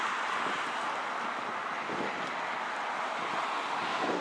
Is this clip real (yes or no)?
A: yes